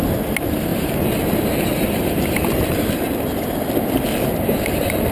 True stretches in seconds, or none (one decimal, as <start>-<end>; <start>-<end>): none